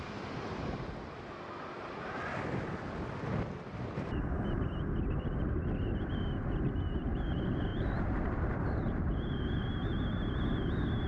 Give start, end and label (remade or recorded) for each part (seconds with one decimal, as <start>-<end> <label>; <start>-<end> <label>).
0.0-7.7 recorded; 7.7-10.0 remade; 10.0-11.1 recorded